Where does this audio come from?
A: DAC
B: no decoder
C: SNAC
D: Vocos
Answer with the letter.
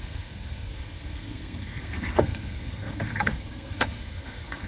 C